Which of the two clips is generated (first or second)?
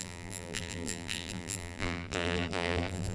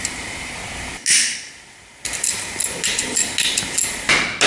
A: first